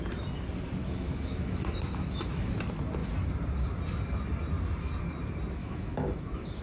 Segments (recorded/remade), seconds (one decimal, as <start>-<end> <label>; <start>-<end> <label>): 0.0-0.8 recorded; 0.8-2.5 remade; 2.5-5.6 recorded; 5.6-6.6 remade